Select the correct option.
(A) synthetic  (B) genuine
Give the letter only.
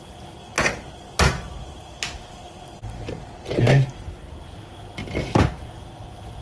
B